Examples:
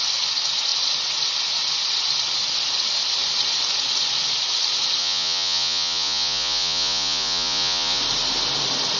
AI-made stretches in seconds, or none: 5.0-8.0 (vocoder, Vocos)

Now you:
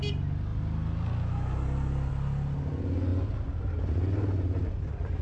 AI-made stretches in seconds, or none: none

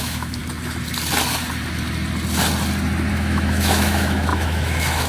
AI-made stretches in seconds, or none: 0.0-0.4 (autoencoder, DAC-VAE); 3.1-5.1

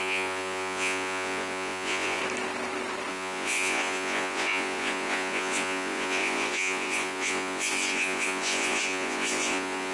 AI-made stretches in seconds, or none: 0.0-2.2 (vocoder, Vocos); 3.1-9.9